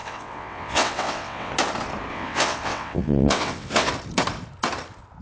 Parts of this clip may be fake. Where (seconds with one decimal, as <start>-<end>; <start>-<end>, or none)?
0.0-1.5; 2.1-3.9